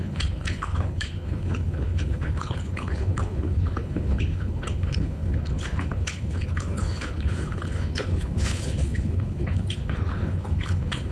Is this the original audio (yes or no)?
no